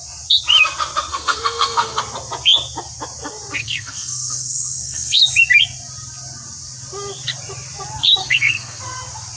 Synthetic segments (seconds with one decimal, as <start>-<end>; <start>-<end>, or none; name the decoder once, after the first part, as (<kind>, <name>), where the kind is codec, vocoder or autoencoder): 1.1-2.0 (codec, SNAC); 3.6-5.2; 8.2-8.8